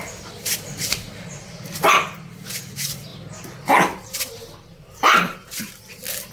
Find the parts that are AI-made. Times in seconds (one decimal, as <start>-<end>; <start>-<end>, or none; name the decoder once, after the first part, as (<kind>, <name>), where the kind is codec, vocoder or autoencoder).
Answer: none

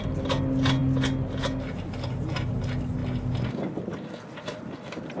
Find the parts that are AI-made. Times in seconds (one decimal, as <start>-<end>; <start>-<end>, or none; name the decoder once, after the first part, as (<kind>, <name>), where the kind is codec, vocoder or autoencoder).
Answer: none

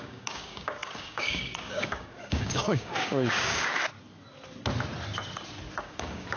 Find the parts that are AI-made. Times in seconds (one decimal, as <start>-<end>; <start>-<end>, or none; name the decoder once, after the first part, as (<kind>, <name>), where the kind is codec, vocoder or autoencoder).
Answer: 0.0-3.7 (codec, DAC); 5.8-6.4

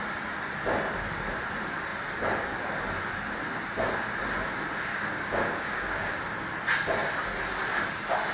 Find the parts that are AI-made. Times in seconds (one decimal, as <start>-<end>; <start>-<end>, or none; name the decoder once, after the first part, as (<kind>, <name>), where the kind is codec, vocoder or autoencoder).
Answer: 4.9-6.2 (codec, DAC)

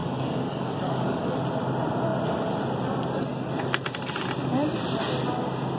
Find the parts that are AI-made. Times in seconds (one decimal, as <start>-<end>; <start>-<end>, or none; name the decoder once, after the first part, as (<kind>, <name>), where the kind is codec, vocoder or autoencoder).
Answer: 0.0-1.4 (codec, DAC)

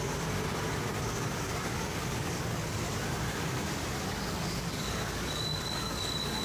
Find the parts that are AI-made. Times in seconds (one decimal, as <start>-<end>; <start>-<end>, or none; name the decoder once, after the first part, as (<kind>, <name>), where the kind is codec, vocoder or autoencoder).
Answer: 0.9-2.8 (codec, DAC); 4.1-6.4

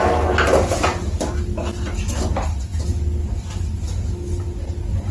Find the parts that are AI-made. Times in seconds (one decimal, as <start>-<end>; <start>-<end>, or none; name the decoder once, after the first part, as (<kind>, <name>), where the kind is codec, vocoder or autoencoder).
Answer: none

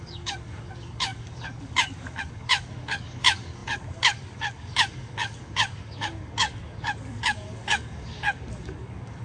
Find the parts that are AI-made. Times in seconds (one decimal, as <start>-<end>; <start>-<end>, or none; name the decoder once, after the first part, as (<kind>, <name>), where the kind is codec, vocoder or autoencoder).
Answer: 0.0-9.2 (codec, DAC)